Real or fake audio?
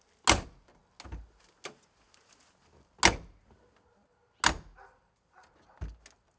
real